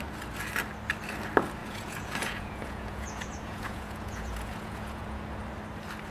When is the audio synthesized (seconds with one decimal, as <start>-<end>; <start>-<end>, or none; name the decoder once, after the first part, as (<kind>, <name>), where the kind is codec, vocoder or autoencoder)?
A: 1.6-5.2 (vocoder, Vocos)